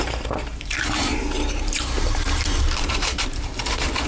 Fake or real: fake